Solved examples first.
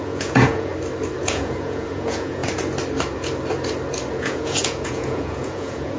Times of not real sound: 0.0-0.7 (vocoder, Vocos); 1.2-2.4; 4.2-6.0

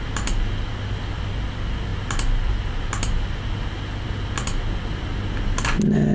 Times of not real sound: none

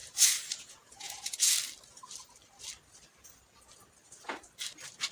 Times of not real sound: 0.0-1.5 (vocoder, Vocos)

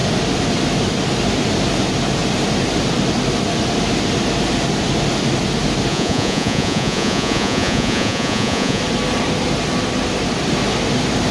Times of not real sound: 5.9-8.8 (vocoder, Vocos)

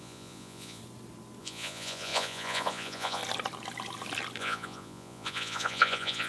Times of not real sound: 0.0-0.8 (vocoder, Vocos); 1.4-3.2; 4.4-6.3